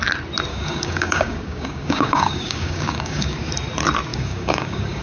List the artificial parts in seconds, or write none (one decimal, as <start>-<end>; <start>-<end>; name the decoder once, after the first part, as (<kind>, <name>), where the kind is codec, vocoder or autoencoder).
0.5-3.5 (codec, DAC); 4.1-5.0